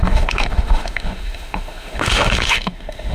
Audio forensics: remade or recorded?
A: remade